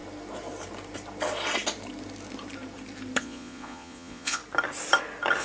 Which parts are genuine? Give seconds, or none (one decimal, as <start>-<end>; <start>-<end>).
0.0-3.2; 4.4-5.4